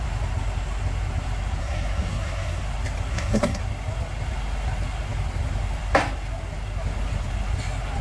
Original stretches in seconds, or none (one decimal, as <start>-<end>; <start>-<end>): 0.0-1.6; 2.6-3.1; 3.6-8.0